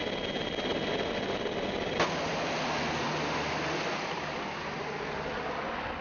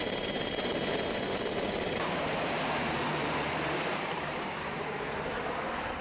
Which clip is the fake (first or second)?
second